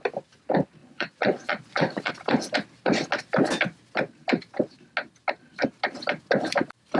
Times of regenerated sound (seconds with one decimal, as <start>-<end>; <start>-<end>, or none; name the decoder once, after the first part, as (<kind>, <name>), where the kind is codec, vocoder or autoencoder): 0.8-2.1 (vocoder, Vocos)